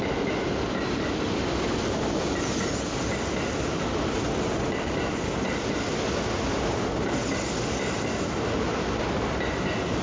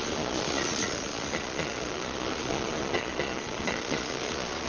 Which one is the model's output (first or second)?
second